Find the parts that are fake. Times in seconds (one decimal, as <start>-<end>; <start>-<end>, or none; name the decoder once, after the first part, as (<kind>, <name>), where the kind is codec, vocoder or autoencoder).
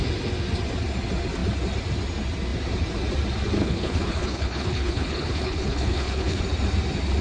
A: 3.6-6.4 (codec, HILCodec)